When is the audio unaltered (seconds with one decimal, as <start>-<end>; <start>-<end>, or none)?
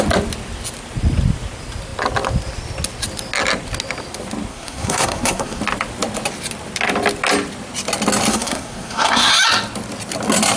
0.0-4.5; 5.6-8.3; 9.3-10.6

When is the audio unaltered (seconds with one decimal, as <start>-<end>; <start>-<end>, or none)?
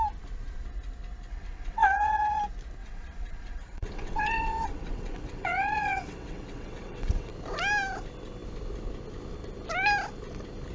0.0-1.3; 2.4-2.8; 7.3-10.7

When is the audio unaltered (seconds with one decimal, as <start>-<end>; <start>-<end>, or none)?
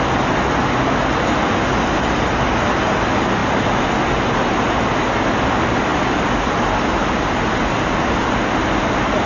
0.0-9.3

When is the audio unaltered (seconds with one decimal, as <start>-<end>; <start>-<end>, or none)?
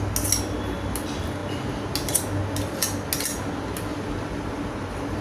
0.0-5.2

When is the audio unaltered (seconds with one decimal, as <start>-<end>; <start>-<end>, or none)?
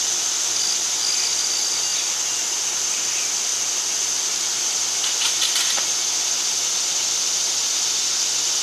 0.0-8.6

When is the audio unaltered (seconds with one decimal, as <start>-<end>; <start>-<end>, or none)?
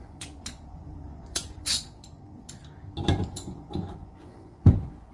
2.6-3.2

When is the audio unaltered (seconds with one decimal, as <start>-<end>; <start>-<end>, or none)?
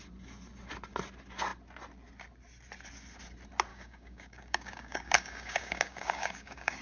0.0-3.7